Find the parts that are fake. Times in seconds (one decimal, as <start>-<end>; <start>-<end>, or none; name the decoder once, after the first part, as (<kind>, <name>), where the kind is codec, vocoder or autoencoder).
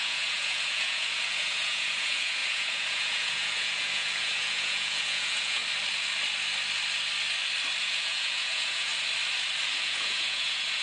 0.0-5.6 (vocoder, Vocos); 7.8-8.9; 9.8-10.8